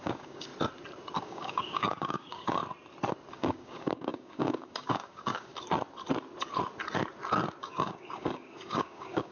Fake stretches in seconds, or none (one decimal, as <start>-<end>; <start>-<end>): 0.0-0.5; 1.2-2.6; 3.3-5.5; 7.6-9.3